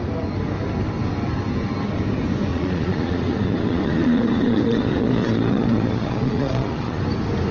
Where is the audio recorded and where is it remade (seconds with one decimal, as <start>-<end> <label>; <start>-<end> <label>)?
0.0-2.5 recorded; 2.5-7.0 remade; 7.0-7.5 recorded